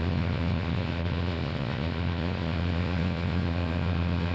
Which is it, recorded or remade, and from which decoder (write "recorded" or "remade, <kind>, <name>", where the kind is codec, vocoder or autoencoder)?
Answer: remade, vocoder, Vocos